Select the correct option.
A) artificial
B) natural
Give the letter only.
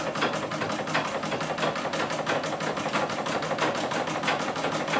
B